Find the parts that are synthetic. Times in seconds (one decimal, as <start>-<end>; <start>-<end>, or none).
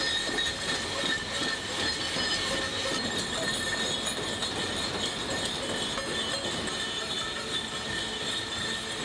none